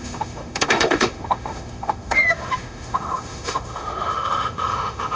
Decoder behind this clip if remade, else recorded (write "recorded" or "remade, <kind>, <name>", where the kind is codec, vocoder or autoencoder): remade, autoencoder, DAC-VAE